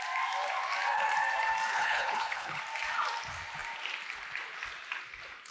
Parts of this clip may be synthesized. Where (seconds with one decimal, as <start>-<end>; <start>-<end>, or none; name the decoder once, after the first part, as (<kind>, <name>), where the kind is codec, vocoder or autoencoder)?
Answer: 1.7-2.6 (codec, HILCodec)